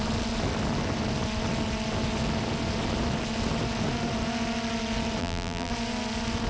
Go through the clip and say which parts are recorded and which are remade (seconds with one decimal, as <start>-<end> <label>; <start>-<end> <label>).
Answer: 0.0-5.2 recorded; 5.2-5.7 remade; 5.7-6.5 recorded